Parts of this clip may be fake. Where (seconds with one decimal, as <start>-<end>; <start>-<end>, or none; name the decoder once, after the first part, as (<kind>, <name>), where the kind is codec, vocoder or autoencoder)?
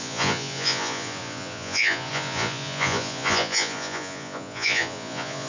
0.0-5.5 (vocoder, Vocos)